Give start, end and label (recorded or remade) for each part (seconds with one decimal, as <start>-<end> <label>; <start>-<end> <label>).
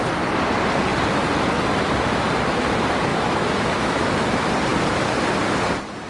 0.0-3.1 recorded; 3.1-4.1 remade; 4.1-6.1 recorded